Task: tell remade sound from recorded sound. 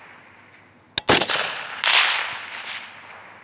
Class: recorded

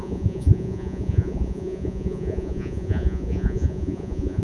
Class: remade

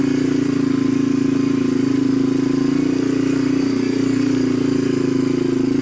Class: recorded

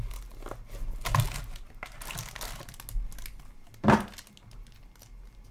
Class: recorded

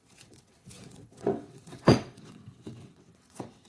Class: remade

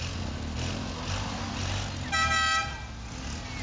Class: recorded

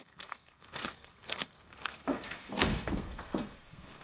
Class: remade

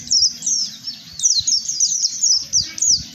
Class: recorded